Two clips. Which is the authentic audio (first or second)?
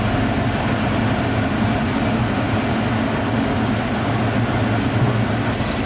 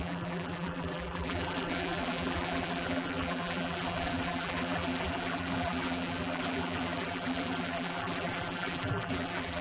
first